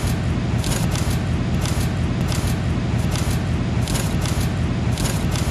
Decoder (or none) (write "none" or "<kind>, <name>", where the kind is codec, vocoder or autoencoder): none